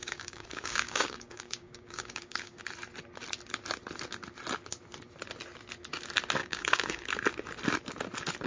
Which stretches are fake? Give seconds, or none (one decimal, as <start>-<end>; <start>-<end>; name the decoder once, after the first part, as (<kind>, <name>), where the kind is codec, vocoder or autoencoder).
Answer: 0.0-2.6 (codec, DAC); 6.4-7.0